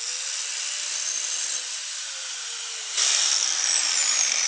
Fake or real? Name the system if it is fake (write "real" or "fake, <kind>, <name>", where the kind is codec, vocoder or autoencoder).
real